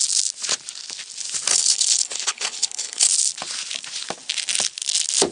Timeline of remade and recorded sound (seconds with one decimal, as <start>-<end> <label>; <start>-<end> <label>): 0.0-1.5 recorded; 1.5-3.1 remade; 3.1-5.3 recorded